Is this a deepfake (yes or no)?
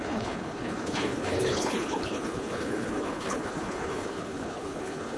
yes